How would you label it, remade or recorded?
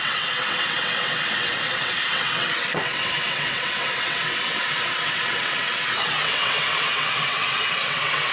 remade